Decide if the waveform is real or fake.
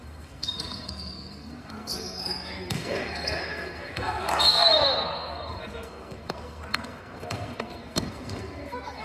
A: fake